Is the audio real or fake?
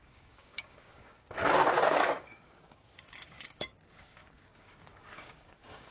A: fake